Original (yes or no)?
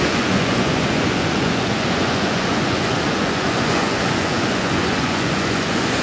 no